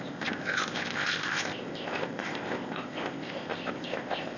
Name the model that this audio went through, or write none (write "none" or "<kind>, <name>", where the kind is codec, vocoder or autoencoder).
codec, ZipCodec